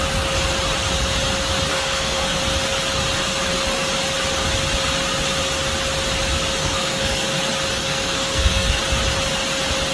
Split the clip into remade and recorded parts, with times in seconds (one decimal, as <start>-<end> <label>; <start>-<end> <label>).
0.0-1.7 recorded; 1.7-2.4 remade; 2.4-6.6 recorded; 6.6-7.3 remade; 7.3-7.8 recorded; 7.8-8.8 remade; 8.8-9.9 recorded